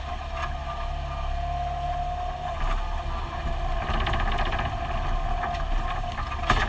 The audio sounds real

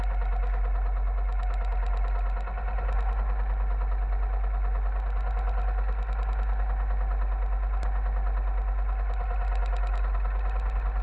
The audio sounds real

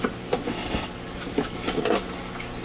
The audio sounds real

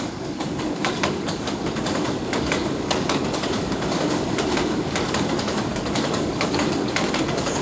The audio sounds fake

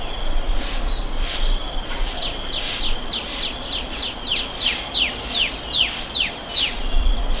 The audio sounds real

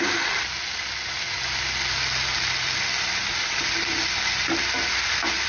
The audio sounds real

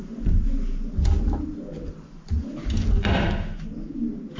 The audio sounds real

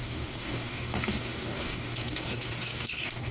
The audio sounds fake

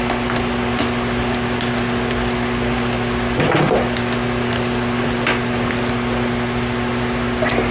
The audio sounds real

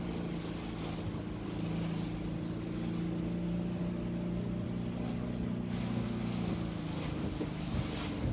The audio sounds real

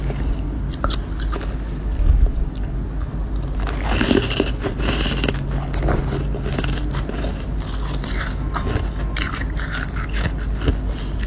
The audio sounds real